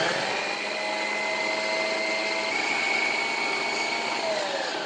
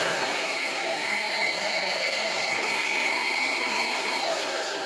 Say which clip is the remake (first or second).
second